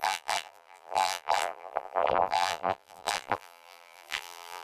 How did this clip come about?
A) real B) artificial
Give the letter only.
B